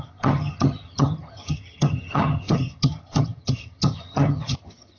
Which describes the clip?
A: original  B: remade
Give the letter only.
B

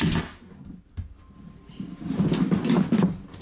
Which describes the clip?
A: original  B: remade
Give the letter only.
A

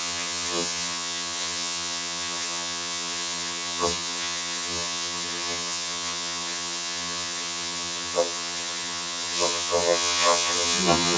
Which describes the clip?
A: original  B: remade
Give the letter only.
B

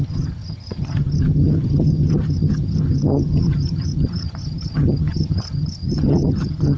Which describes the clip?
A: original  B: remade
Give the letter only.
B